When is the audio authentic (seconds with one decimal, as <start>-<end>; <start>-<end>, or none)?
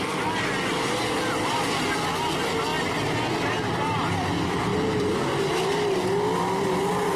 0.0-7.2